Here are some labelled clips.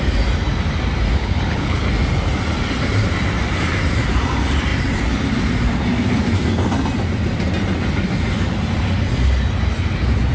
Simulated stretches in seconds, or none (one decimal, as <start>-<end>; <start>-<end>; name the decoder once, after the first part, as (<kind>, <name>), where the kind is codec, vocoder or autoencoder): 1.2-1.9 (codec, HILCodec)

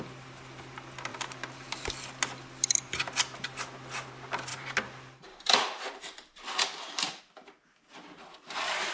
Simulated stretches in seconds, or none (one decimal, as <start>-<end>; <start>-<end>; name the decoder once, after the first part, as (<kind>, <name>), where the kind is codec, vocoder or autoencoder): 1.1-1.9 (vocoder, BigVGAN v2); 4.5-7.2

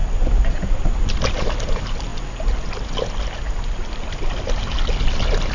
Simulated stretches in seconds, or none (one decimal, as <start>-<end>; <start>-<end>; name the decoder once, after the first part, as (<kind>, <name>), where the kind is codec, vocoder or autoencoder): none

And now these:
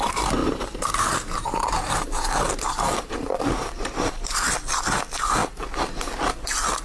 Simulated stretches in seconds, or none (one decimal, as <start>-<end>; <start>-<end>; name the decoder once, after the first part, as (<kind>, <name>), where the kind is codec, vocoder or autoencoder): 0.4-4.5 (vocoder, BigVGAN v2)